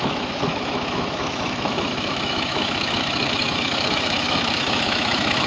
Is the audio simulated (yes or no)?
yes